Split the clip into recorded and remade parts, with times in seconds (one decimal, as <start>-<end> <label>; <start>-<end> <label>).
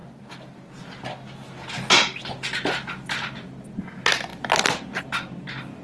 0.0-5.8 recorded